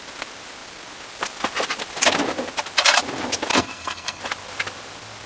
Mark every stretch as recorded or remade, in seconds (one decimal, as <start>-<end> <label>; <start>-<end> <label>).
0.0-3.5 recorded; 3.5-4.2 remade; 4.2-5.3 recorded